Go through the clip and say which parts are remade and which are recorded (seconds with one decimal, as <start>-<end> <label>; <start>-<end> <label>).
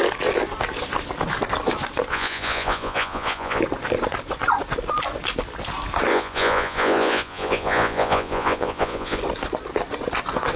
0.0-2.1 recorded; 2.1-3.6 remade; 3.6-6.1 recorded; 6.1-9.2 remade; 9.2-10.6 recorded